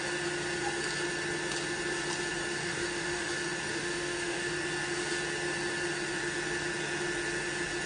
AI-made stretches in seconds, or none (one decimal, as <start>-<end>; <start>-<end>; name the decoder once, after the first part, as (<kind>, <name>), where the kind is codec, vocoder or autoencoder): 2.6-3.3 (autoencoder, DAC-VAE); 3.7-4.5